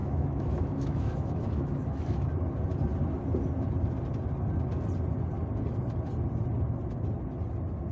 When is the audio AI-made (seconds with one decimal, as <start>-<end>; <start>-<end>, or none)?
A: 0.0-2.3